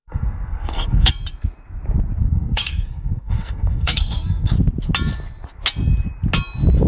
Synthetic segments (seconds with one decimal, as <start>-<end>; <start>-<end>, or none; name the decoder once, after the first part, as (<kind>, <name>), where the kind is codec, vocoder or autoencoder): 0.0-1.1 (codec, SNAC); 2.2-4.5